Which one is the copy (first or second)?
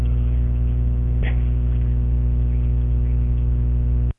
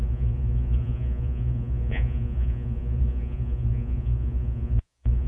second